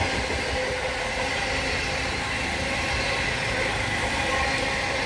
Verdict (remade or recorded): recorded